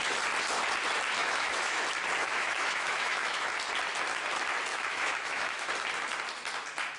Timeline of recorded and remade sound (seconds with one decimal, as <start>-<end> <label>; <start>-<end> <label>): 0.0-1.2 recorded; 1.2-1.8 remade; 1.8-2.2 recorded; 2.2-3.5 remade; 3.5-4.7 recorded; 4.7-5.7 remade; 5.7-7.0 recorded

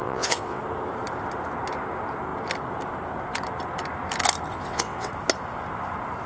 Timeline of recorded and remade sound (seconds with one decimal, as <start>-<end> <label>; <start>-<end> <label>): 0.0-0.6 remade; 0.6-4.5 recorded; 4.5-5.1 remade; 5.1-6.3 recorded

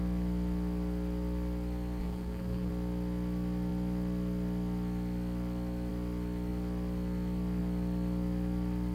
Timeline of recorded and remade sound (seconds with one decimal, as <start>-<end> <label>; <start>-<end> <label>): 0.0-2.0 recorded; 2.0-2.7 remade; 2.7-8.9 recorded

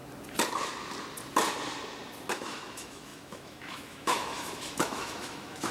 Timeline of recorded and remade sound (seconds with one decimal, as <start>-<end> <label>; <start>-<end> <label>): 0.0-2.3 recorded; 2.3-5.7 remade

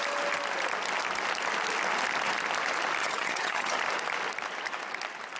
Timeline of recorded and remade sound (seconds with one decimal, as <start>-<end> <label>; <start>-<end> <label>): 0.0-3.0 recorded; 3.0-3.8 remade; 3.8-5.4 recorded

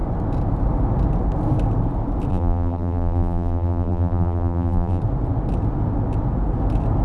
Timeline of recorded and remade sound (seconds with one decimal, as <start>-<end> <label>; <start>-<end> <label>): 0.0-2.3 recorded; 2.3-5.0 remade; 5.0-7.0 recorded

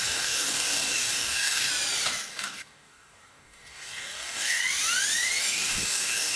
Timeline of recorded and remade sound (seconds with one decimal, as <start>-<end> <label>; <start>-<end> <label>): 0.0-1.7 remade; 1.7-2.3 recorded; 2.3-4.6 remade; 4.6-5.4 recorded; 5.4-6.4 remade

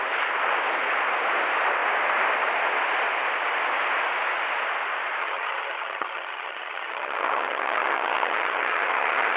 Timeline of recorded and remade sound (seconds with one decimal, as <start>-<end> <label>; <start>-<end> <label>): 0.0-5.2 recorded; 5.2-9.4 remade